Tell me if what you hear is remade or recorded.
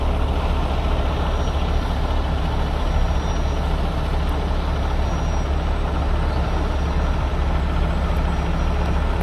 recorded